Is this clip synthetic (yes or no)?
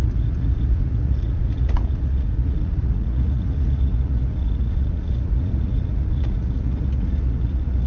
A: yes